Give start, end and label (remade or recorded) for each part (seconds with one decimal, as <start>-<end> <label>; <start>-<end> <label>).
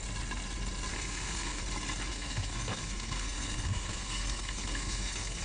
0.0-0.9 recorded; 0.9-1.6 remade; 1.6-2.1 recorded; 2.1-5.4 remade